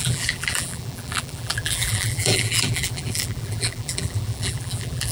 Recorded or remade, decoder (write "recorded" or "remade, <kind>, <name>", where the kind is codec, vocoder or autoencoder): remade, vocoder, BigVGAN v2